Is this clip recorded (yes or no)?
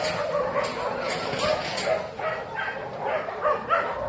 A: yes